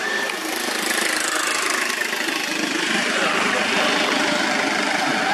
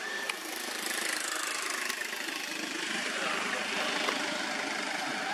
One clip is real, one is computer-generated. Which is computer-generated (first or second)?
second